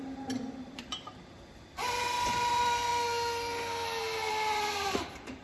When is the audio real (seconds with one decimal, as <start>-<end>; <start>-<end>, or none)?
2.9-4.3